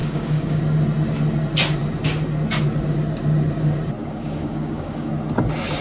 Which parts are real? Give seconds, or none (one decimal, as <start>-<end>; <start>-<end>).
0.6-4.0; 5.1-5.8